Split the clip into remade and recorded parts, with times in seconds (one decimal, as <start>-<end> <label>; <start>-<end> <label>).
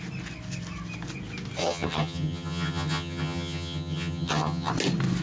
0.0-1.6 recorded; 1.6-4.7 remade; 4.7-5.2 recorded